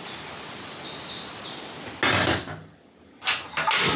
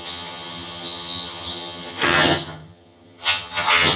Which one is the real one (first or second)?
first